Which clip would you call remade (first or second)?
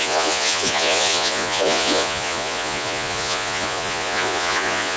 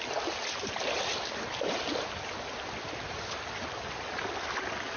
first